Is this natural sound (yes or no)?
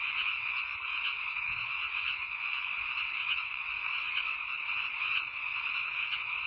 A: no